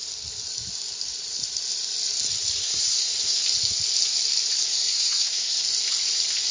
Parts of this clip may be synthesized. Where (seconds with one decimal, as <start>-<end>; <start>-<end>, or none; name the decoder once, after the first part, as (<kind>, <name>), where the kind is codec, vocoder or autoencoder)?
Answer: 2.6-3.4 (codec, SNAC); 4.7-5.6